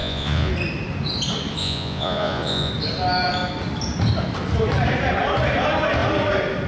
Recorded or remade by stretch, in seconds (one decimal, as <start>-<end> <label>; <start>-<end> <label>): 0.0-0.5 remade; 0.5-1.6 recorded; 1.6-2.7 remade; 2.7-6.7 recorded